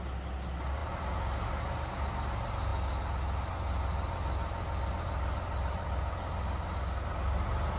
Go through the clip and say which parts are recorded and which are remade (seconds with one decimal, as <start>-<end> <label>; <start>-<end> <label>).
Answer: 0.0-7.8 recorded